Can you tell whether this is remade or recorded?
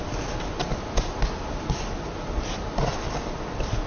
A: recorded